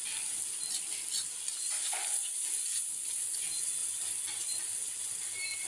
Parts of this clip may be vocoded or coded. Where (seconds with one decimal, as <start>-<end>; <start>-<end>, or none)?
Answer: none